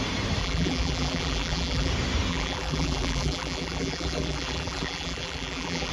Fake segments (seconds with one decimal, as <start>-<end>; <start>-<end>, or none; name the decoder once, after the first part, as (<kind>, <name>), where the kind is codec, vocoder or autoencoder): 0.4-1.9 (vocoder, BigVGAN v2); 2.3-5.9